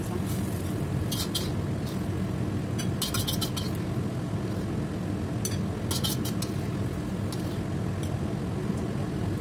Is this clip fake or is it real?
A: real